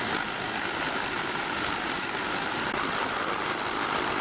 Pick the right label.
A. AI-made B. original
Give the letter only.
B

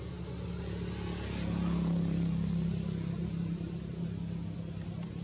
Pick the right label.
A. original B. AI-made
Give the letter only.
A